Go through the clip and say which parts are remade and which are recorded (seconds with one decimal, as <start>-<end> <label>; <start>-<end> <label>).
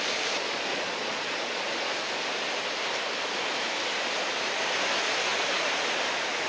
0.0-0.7 recorded; 0.7-1.9 remade; 1.9-6.5 recorded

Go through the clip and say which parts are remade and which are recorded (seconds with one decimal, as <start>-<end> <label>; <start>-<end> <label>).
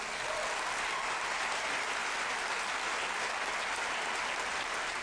0.0-5.0 recorded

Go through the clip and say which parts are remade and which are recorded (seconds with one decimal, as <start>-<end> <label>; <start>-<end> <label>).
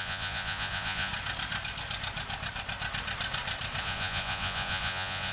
0.0-1.1 remade; 1.1-3.8 recorded; 3.8-5.3 remade